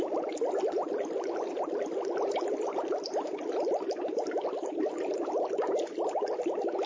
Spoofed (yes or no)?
no